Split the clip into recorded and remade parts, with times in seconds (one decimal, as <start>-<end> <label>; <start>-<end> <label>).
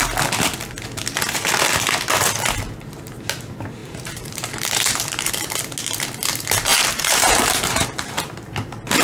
0.0-3.8 recorded; 3.8-5.3 remade; 5.3-6.7 recorded; 6.7-8.1 remade; 8.1-9.0 recorded